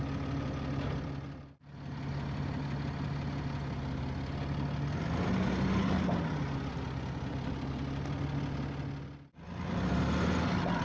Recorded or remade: recorded